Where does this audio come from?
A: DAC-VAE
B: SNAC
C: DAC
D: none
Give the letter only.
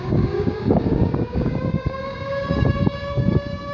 C